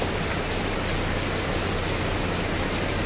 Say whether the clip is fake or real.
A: real